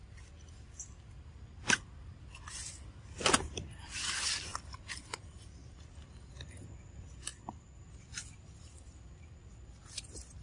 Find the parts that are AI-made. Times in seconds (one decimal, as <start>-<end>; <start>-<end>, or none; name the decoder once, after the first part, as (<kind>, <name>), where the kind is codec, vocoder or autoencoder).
none